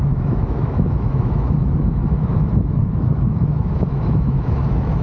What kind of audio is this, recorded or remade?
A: remade